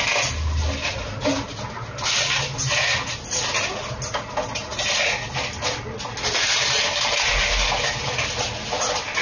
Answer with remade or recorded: recorded